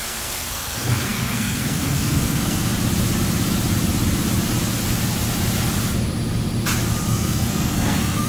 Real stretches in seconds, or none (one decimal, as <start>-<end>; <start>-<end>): 2.7-7.1